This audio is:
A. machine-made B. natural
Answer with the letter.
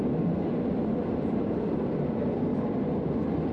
B